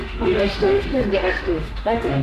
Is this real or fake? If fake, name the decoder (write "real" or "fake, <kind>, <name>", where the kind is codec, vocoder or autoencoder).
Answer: fake, autoencoder, DAC-VAE